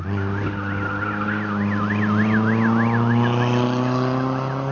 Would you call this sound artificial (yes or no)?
no